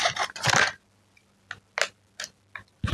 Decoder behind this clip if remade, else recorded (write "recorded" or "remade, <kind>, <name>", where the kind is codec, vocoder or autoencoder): recorded